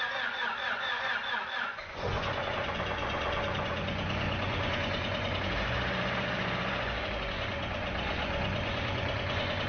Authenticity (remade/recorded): remade